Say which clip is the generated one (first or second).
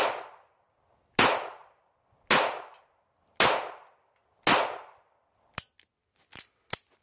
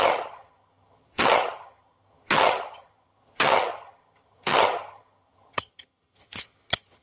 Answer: second